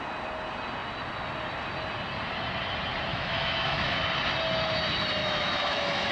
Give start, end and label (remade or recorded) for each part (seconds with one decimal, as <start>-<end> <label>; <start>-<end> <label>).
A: 0.0-3.1 recorded; 3.1-4.0 remade; 4.0-5.2 recorded; 5.2-6.1 remade